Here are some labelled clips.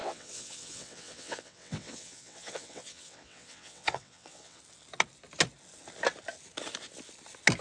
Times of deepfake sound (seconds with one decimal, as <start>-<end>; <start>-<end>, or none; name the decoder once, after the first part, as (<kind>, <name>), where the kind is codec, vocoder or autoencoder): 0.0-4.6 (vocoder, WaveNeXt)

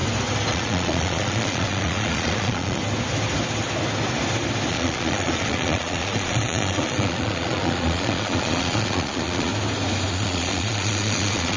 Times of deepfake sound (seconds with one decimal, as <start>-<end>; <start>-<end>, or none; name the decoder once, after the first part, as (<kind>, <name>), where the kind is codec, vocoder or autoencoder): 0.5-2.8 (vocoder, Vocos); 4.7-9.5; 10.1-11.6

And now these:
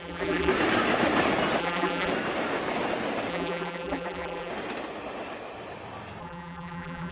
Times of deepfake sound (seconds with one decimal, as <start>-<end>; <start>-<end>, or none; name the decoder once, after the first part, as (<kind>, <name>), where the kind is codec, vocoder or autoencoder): 0.0-0.5 (vocoder, BigVGAN v2); 1.6-2.1; 3.3-4.5; 6.2-7.1

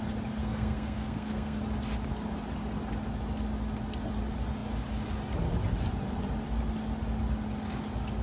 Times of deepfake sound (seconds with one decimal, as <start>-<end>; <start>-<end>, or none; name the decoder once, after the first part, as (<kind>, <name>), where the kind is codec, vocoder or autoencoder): 0.4-1.6 (codec, SNAC)

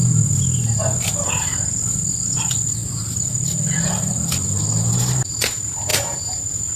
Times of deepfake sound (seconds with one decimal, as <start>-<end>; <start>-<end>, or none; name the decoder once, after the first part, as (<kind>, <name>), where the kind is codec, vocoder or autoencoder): none

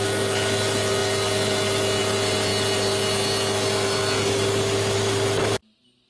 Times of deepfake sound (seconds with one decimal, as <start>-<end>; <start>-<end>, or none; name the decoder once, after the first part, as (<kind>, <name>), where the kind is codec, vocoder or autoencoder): none